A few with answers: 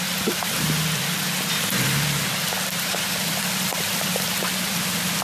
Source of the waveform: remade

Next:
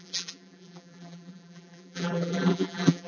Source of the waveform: remade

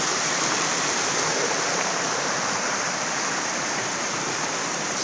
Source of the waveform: remade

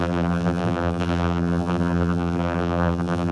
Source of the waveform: remade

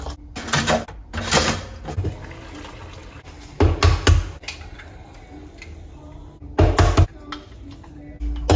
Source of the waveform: recorded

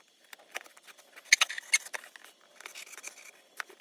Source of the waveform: recorded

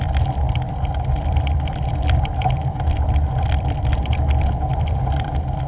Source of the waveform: remade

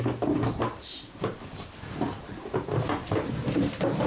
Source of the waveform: remade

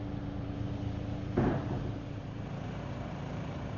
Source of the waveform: remade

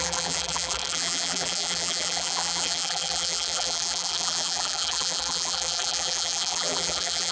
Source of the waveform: remade